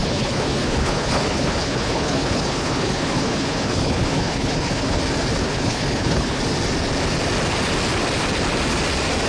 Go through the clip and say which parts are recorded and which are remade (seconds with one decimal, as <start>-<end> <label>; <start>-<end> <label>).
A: 0.0-5.0 remade; 5.0-5.4 recorded; 5.4-6.4 remade; 6.4-9.3 recorded

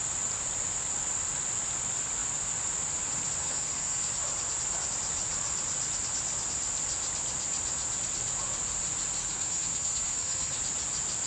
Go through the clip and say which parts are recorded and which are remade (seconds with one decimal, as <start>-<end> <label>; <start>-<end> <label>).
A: 0.0-3.4 recorded; 3.4-4.1 remade; 4.1-9.2 recorded; 9.2-10.6 remade; 10.6-11.3 recorded

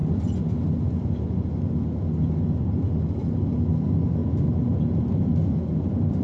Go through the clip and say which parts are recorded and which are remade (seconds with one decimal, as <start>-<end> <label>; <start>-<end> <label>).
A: 0.0-6.2 recorded

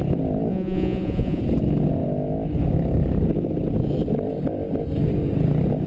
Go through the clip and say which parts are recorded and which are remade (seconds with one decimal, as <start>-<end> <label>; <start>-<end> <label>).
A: 0.0-0.5 recorded; 0.5-1.4 remade; 1.4-5.9 recorded

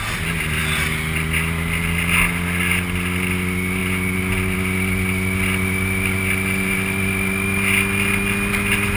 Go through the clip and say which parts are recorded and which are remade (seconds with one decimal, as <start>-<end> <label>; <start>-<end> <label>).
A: 0.0-9.0 recorded

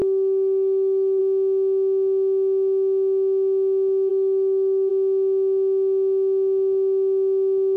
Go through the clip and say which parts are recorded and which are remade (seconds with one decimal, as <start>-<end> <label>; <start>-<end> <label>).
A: 0.0-1.2 remade; 1.2-4.1 recorded; 4.1-4.9 remade; 4.9-7.8 recorded